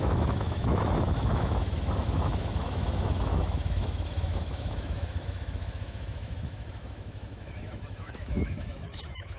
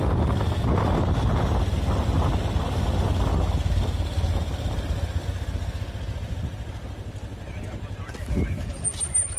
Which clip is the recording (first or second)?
second